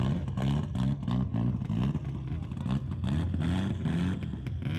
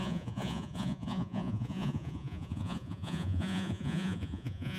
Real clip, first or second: first